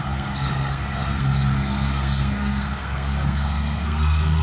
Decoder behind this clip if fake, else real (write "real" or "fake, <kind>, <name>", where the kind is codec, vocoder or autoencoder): fake, codec, SNAC